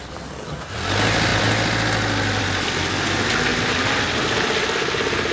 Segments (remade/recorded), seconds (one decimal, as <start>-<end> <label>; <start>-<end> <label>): 0.0-5.3 recorded